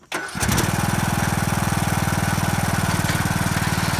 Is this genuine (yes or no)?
yes